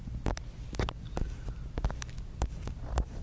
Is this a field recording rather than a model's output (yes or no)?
yes